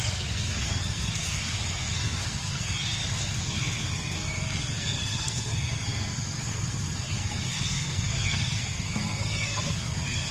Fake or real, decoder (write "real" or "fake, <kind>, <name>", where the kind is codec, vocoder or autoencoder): fake, codec, SNAC